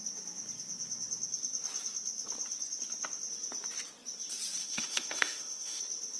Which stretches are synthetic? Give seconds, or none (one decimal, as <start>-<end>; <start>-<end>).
4.6-5.8